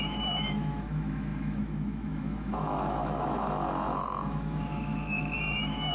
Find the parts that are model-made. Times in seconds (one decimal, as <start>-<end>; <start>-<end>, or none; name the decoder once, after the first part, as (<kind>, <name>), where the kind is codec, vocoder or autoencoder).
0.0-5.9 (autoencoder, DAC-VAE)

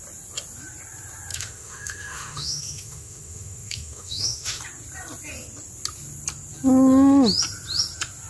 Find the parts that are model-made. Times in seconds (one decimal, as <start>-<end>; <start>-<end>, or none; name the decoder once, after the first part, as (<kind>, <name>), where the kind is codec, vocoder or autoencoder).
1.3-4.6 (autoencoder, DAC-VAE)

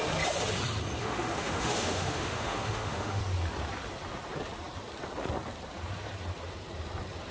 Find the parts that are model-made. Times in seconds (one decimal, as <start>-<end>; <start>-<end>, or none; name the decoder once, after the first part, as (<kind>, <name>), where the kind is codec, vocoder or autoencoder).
1.0-3.2 (autoencoder, DAC-VAE)

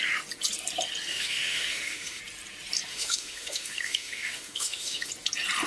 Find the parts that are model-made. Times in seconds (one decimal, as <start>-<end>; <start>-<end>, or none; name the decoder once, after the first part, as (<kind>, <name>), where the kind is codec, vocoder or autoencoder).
1.1-2.2 (autoencoder, DAC-VAE); 2.9-5.1

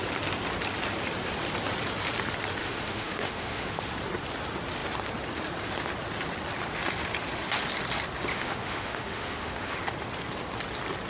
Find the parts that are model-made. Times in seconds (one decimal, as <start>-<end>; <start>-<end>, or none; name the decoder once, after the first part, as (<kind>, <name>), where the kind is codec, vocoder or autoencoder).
2.6-3.9 (autoencoder, DAC-VAE); 8.3-9.8